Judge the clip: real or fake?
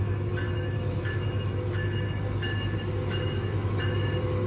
fake